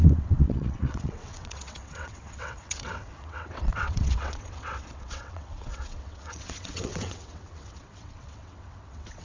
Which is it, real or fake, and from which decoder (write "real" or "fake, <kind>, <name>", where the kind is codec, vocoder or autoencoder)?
fake, vocoder, WaveNeXt